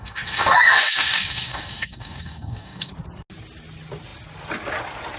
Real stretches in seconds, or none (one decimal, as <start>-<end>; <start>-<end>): 2.9-5.2